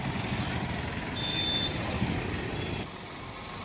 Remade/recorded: recorded